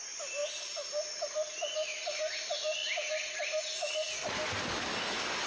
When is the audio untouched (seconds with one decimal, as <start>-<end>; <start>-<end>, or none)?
0.0-5.5